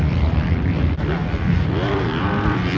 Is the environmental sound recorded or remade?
remade